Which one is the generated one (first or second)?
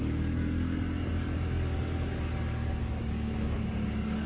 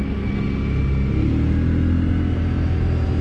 first